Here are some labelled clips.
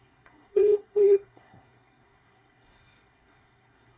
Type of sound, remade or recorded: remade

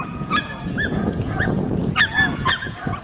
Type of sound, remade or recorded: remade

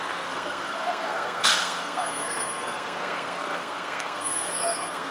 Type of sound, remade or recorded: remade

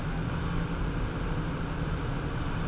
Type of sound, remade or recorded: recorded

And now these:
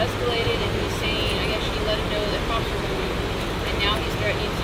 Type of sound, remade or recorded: recorded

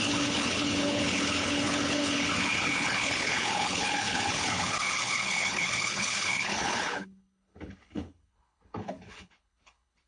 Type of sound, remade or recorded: remade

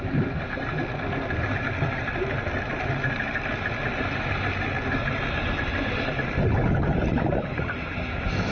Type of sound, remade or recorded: recorded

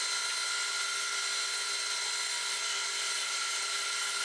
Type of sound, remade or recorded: recorded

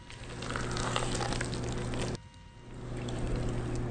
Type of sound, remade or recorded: recorded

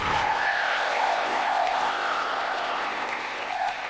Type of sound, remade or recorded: remade